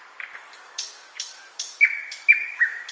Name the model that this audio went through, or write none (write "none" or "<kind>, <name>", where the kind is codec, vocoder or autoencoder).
codec, DAC